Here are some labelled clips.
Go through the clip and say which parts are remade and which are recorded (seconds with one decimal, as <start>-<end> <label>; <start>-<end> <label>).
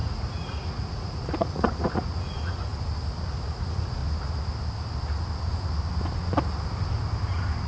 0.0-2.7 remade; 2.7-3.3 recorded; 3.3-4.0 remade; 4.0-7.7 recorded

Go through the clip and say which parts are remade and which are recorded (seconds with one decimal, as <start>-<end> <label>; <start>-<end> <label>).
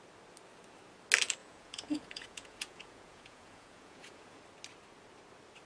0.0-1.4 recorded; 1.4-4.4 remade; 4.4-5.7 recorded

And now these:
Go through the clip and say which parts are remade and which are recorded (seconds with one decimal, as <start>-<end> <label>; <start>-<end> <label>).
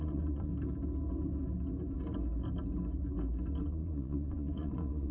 0.0-0.5 remade; 0.5-3.6 recorded; 3.6-5.1 remade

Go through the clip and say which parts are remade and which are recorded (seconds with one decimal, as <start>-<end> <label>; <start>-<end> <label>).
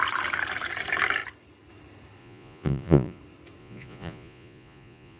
0.0-2.2 recorded; 2.2-3.2 remade; 3.2-3.6 recorded; 3.6-5.2 remade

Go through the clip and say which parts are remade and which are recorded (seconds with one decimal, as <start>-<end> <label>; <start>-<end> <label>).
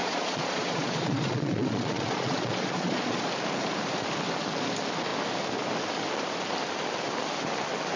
0.0-3.3 remade; 3.3-8.0 recorded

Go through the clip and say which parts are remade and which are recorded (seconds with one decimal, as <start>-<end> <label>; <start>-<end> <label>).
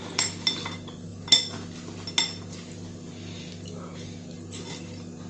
0.0-5.3 recorded